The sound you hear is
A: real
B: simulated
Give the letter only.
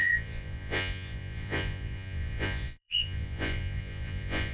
B